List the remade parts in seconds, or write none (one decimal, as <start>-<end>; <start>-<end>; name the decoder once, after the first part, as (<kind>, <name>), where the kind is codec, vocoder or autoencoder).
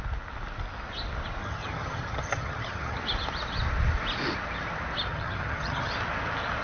1.4-3.0 (vocoder, HiFi-GAN); 5.1-5.9